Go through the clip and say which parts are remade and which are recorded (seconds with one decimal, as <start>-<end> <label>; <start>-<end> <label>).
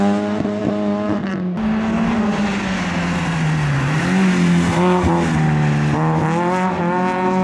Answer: 0.0-7.4 recorded